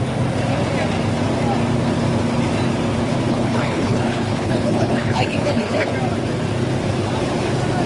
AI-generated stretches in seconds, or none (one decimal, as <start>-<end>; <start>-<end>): 3.3-5.9